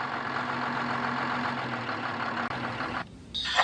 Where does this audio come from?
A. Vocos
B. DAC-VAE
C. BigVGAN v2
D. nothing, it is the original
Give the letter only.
D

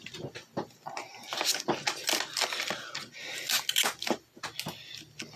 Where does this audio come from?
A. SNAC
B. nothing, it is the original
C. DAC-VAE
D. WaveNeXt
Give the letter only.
B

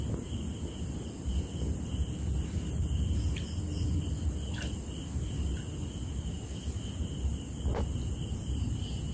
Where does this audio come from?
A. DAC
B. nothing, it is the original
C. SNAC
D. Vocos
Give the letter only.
B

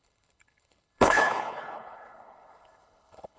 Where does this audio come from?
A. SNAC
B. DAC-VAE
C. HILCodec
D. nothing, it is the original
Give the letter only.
C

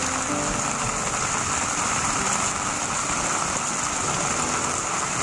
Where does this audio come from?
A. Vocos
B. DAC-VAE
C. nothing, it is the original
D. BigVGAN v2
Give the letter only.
C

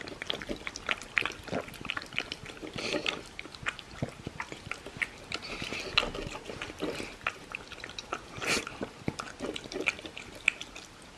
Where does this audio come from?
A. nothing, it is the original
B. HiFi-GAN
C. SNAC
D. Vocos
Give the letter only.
A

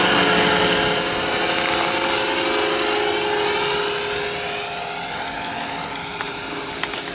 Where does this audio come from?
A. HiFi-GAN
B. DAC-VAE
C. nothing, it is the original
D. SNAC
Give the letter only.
C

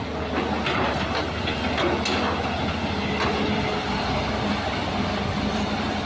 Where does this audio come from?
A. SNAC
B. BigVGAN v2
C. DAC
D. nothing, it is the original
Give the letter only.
D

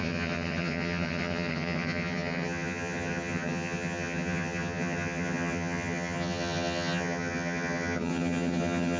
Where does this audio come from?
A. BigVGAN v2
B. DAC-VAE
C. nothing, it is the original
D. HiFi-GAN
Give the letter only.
D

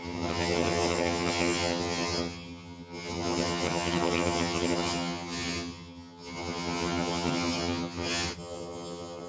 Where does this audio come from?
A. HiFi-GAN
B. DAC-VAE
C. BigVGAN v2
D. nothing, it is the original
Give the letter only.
A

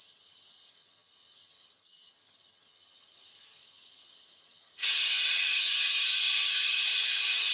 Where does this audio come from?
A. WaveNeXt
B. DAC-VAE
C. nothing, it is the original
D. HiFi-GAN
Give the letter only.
D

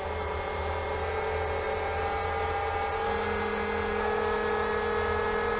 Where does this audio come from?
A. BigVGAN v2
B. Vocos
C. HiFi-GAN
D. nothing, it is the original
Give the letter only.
D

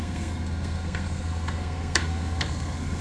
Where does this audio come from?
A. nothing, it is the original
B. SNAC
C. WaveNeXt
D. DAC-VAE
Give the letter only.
B